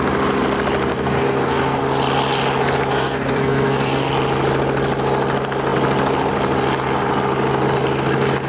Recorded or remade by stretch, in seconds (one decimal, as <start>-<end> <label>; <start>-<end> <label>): 0.0-0.9 recorded; 0.9-1.8 remade; 1.8-2.9 recorded; 2.9-4.1 remade; 4.1-8.5 recorded